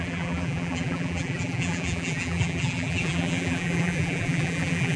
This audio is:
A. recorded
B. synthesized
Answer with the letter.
B